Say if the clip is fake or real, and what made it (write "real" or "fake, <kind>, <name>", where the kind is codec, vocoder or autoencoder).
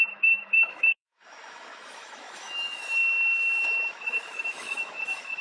fake, autoencoder, DAC-VAE